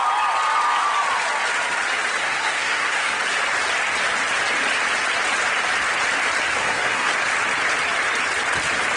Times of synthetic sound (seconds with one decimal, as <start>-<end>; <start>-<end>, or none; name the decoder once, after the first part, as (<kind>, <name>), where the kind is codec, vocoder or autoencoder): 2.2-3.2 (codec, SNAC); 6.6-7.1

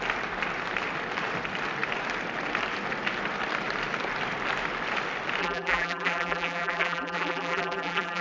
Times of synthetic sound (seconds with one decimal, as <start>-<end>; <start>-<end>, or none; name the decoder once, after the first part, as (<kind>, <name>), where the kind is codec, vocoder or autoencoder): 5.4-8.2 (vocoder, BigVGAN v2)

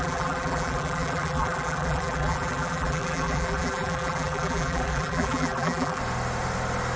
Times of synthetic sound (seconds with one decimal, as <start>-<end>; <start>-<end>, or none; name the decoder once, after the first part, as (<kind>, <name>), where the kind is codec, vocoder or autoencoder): 0.0-6.0 (vocoder, BigVGAN v2)

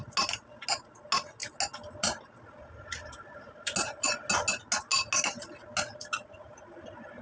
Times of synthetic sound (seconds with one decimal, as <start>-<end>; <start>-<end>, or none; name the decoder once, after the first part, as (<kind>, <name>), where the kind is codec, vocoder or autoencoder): none

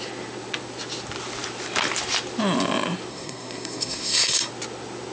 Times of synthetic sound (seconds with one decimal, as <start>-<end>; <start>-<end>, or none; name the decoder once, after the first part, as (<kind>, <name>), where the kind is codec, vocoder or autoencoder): 3.1-4.5 (codec, SNAC)